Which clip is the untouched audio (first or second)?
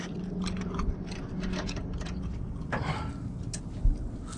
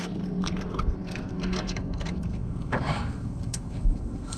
first